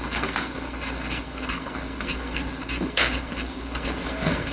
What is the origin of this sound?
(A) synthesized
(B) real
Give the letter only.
A